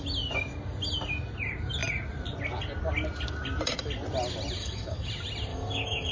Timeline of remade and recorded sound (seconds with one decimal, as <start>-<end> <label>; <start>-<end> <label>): 0.0-4.6 recorded; 4.6-5.1 remade; 5.1-5.5 recorded; 5.5-6.1 remade